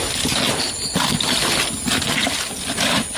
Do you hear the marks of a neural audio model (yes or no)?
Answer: no